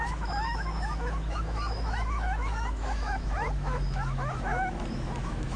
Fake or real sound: fake